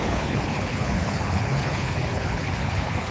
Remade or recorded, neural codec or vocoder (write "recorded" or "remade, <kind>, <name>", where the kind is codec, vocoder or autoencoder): remade, codec, HILCodec